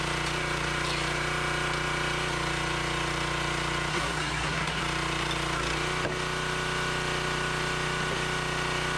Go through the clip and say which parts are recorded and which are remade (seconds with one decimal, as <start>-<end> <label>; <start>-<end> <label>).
0.0-3.9 recorded; 3.9-4.8 remade; 4.8-9.0 recorded